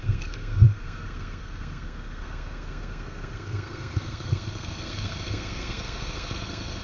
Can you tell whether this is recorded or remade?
remade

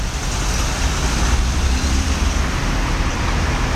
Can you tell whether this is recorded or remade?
recorded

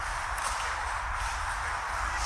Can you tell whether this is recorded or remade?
recorded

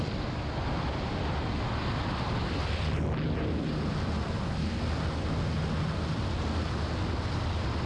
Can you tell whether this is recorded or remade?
recorded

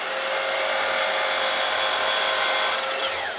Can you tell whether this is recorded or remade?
recorded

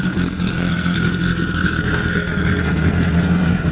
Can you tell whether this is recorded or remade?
remade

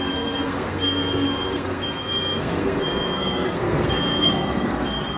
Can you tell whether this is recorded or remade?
remade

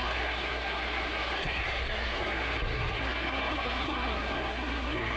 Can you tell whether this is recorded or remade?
remade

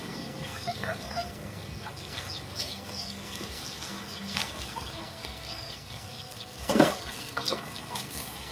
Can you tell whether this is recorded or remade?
remade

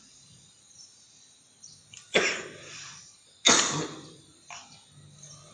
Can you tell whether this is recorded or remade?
recorded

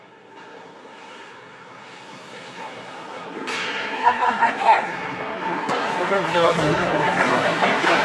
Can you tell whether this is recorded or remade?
remade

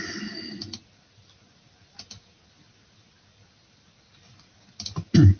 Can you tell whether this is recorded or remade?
recorded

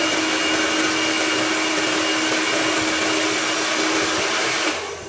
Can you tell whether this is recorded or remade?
recorded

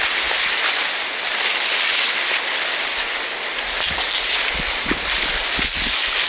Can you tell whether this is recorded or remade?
recorded